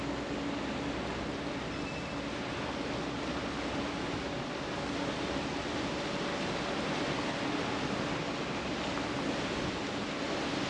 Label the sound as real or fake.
real